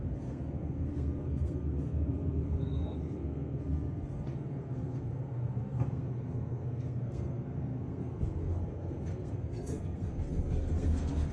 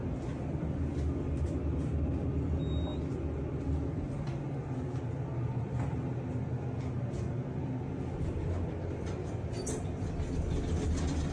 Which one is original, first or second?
second